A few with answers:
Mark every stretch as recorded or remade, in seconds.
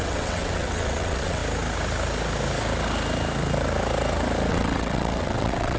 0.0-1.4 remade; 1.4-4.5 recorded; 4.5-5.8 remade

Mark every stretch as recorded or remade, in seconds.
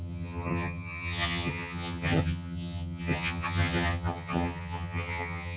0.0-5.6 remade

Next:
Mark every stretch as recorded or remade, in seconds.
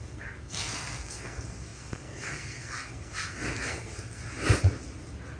0.0-4.2 remade; 4.2-5.4 recorded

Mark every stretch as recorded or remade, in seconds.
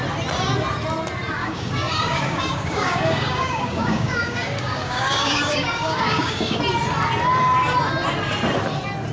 0.0-1.4 recorded; 1.4-6.6 remade; 6.6-9.1 recorded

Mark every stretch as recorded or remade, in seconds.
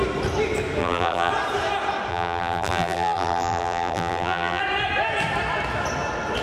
0.0-0.8 recorded; 0.8-1.3 remade; 1.3-2.1 recorded; 2.1-4.6 remade; 4.6-6.4 recorded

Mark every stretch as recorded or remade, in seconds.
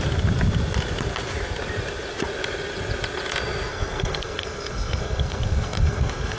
0.0-3.7 recorded; 3.7-6.4 remade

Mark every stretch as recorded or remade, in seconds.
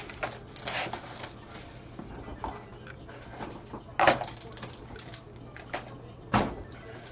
0.0-7.1 recorded